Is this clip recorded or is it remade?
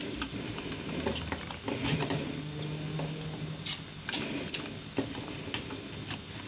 recorded